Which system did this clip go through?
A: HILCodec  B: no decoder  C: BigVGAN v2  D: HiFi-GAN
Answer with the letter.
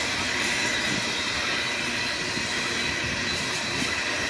B